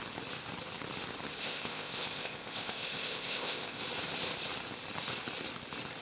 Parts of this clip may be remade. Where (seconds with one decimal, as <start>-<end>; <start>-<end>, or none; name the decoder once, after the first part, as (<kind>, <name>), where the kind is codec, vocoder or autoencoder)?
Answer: 1.4-3.8 (codec, ZipCodec)